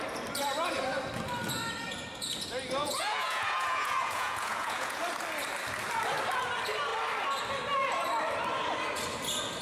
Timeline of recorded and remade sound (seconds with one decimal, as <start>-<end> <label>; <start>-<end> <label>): 0.0-2.8 recorded; 2.8-5.0 remade; 5.0-9.6 recorded